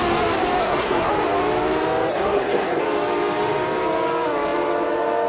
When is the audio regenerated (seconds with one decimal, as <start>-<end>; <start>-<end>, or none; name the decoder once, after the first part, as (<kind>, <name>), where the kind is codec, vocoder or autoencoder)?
0.6-1.1 (codec, SNAC); 2.1-2.8